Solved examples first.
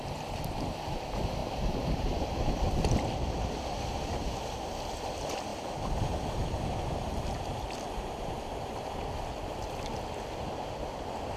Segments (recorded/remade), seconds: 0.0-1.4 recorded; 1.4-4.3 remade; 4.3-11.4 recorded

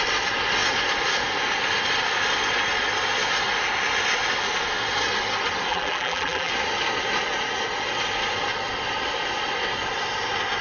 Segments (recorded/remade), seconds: 0.0-5.7 recorded; 5.7-6.5 remade; 6.5-10.6 recorded